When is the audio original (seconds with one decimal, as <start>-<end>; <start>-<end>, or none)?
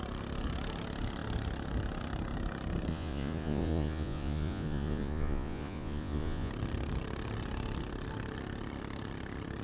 0.0-2.9; 6.5-9.6